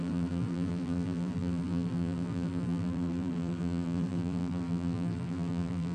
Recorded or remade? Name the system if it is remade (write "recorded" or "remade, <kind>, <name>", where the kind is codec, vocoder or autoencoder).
remade, vocoder, BigVGAN v2